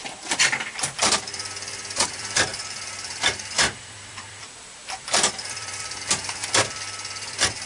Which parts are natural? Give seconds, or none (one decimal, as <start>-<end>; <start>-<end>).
6.4-7.7